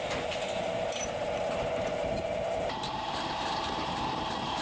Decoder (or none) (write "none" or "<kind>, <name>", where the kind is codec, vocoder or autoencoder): vocoder, BigVGAN v2